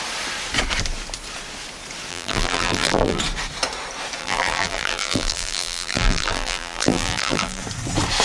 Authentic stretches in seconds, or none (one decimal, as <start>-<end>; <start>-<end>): 0.0-2.1; 3.2-4.2; 7.6-8.2